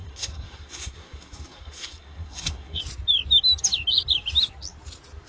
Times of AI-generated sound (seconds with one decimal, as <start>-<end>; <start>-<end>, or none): 0.0-2.8